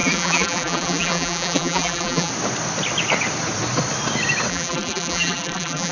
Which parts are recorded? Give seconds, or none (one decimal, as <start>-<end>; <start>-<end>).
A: 2.3-4.5